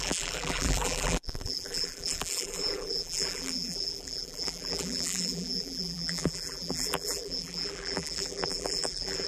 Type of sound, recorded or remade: remade